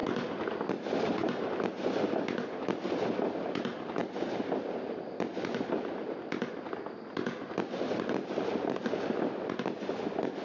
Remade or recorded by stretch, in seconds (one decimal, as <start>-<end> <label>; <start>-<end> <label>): 0.0-10.4 recorded